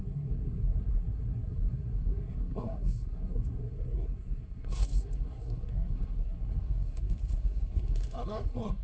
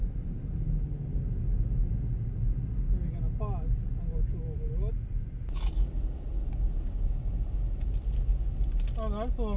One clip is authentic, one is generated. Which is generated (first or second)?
first